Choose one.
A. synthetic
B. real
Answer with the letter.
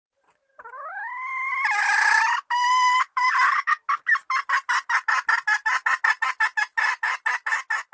B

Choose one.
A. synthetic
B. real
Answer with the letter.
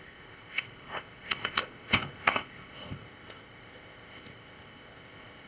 A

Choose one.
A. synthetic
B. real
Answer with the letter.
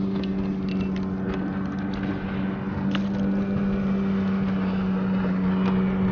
B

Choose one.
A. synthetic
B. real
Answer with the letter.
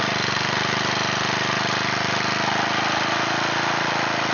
B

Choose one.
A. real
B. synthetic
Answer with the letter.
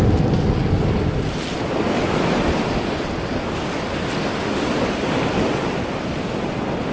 A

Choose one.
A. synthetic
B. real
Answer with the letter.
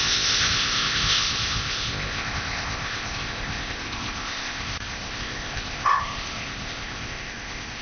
A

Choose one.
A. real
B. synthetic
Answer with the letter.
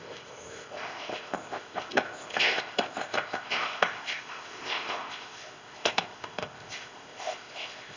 B